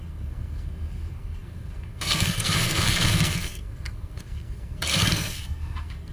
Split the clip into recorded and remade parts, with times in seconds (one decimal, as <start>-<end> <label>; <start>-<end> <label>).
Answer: 0.0-6.1 remade